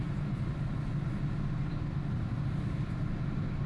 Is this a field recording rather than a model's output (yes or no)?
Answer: yes